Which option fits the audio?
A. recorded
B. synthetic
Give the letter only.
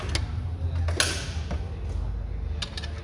A